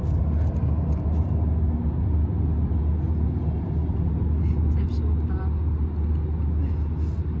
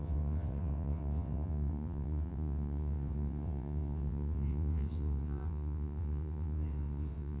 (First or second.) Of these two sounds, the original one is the first